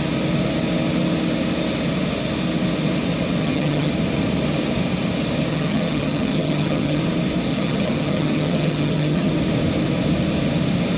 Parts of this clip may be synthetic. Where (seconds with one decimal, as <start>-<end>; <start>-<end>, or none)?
3.4-3.9; 5.5-7.0; 7.5-9.3